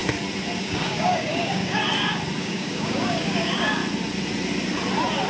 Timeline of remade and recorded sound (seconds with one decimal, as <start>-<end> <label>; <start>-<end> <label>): 0.0-0.6 recorded; 0.6-1.8 remade; 1.8-2.4 recorded; 2.4-3.8 remade; 3.8-5.3 recorded